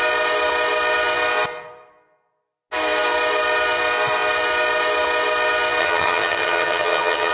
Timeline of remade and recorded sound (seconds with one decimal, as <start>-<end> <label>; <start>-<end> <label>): 0.0-5.8 recorded; 5.8-7.3 remade